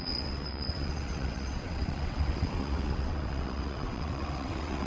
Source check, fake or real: fake